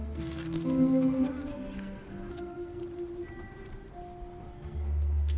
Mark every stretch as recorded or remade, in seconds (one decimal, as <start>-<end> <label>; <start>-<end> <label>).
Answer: 0.0-2.8 remade; 2.8-4.4 recorded; 4.4-5.4 remade